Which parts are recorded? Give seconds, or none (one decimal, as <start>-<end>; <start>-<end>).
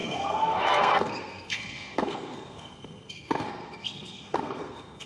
none